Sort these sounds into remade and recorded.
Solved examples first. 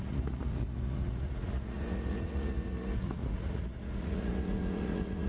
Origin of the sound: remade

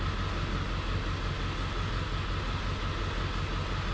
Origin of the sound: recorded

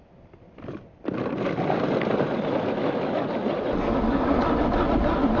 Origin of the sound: recorded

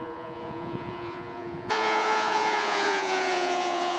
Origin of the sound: remade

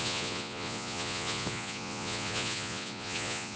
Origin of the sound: remade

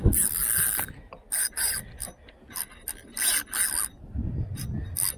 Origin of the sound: recorded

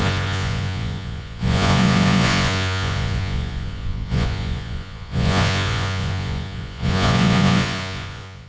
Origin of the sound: remade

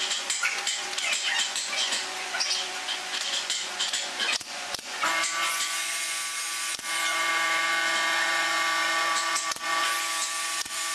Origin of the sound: remade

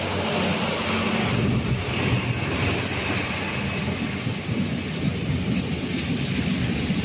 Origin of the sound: recorded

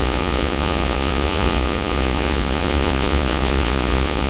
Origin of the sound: remade